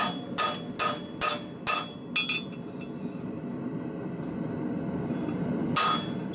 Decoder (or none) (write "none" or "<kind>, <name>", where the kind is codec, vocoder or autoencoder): none